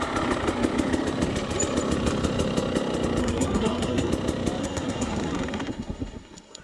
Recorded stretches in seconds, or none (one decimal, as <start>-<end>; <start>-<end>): 0.0-3.2; 4.1-4.6